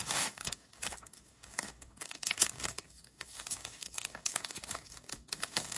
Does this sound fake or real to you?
fake